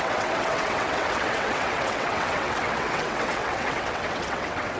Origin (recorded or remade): remade